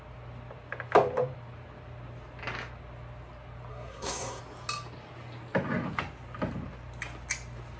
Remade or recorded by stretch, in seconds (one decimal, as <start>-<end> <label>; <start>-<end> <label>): 0.0-3.7 recorded; 3.7-4.4 remade; 4.4-7.8 recorded